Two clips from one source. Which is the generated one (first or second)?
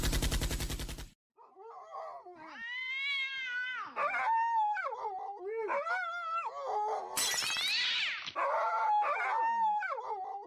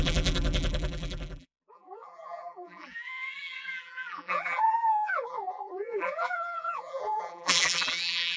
second